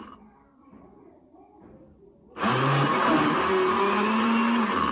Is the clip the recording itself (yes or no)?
yes